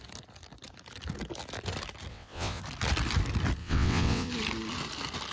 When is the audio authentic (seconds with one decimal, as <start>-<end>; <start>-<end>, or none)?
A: 0.0-2.1; 2.6-3.6; 4.3-5.3